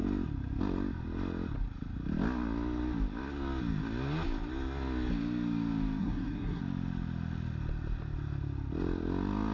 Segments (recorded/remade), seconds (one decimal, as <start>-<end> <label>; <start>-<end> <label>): 0.0-6.0 recorded; 6.0-6.6 remade; 6.6-9.5 recorded